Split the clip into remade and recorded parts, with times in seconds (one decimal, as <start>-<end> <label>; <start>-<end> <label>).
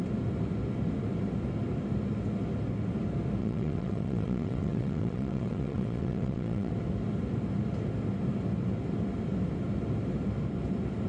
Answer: 0.0-3.4 recorded; 3.4-6.7 remade; 6.7-11.1 recorded